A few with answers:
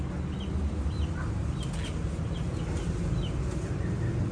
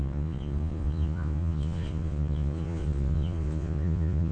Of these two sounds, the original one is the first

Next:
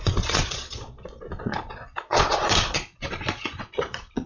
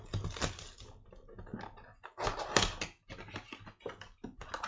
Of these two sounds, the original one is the second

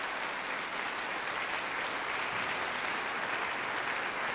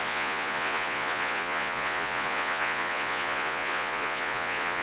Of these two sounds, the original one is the first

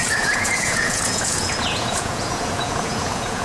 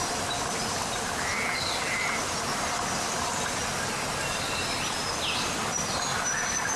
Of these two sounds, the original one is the second